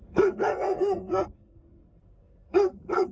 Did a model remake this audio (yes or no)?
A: yes